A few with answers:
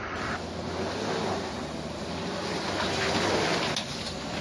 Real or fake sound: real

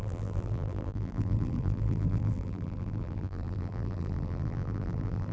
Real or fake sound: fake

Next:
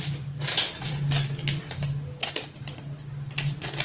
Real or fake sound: real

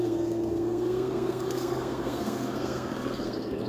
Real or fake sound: fake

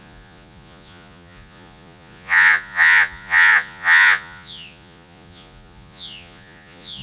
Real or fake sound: fake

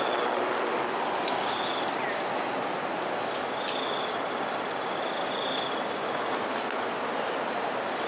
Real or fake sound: real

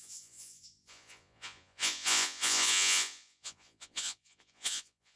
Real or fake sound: fake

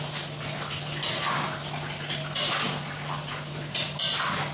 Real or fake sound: real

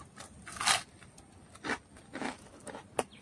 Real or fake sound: real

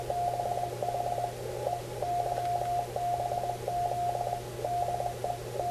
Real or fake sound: real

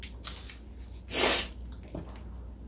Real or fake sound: real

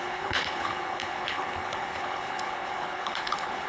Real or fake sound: fake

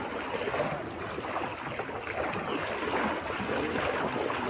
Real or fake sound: real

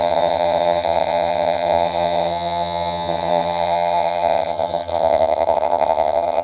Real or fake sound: fake